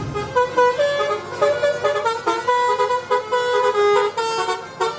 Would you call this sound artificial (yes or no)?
no